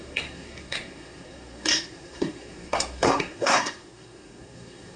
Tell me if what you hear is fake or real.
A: fake